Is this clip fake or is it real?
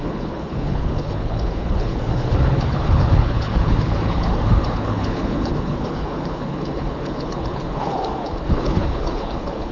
fake